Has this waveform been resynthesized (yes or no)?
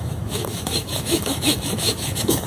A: yes